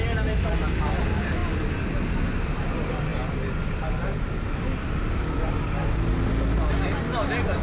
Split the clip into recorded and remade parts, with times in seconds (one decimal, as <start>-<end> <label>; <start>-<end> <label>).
0.0-7.6 recorded